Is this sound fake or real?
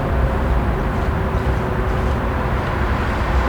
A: real